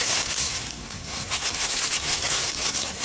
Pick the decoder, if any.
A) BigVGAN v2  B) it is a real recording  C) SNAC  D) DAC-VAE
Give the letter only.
C